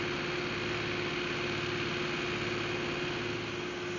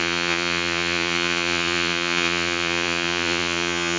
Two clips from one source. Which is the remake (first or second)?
second